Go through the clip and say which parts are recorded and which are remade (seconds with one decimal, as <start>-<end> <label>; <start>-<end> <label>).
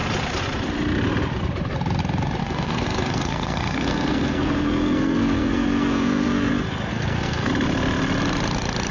0.0-2.4 recorded; 2.4-6.5 remade; 6.5-6.9 recorded; 6.9-7.5 remade; 7.5-8.9 recorded